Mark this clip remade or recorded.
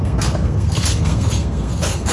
remade